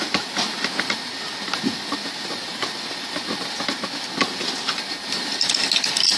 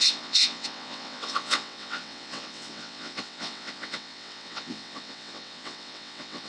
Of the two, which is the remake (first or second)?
second